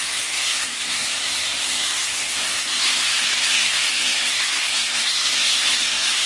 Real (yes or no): no